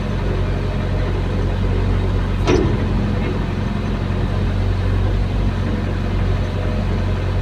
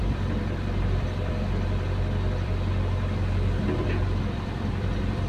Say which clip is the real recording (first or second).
first